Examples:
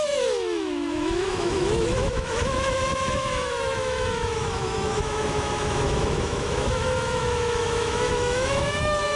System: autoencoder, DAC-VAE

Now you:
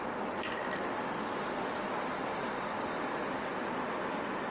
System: none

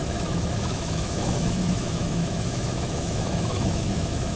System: autoencoder, DAC-VAE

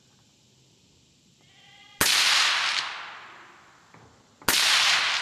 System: none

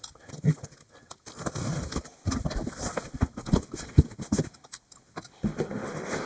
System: none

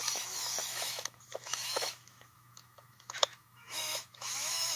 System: autoencoder, DAC-VAE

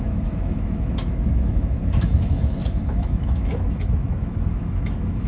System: autoencoder, DAC-VAE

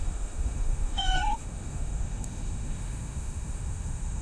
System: autoencoder, DAC-VAE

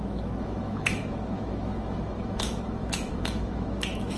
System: autoencoder, DAC-VAE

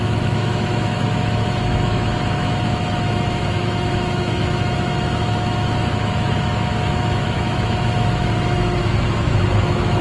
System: autoencoder, DAC-VAE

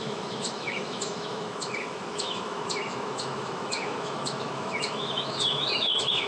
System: autoencoder, DAC-VAE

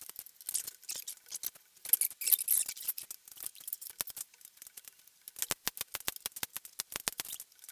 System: none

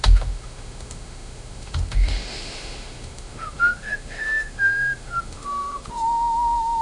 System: autoencoder, DAC-VAE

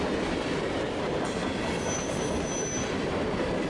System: none